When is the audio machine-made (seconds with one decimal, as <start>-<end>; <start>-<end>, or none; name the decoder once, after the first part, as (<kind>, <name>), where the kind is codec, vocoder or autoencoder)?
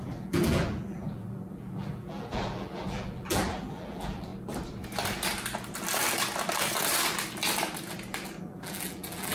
0.0-4.3 (vocoder, BigVGAN v2); 8.4-9.3